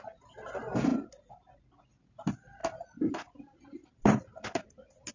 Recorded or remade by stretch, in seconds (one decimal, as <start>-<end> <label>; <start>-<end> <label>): 0.0-5.1 recorded